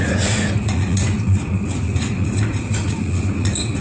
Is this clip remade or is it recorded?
remade